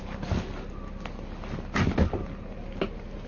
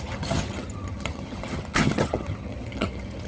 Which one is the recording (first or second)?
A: first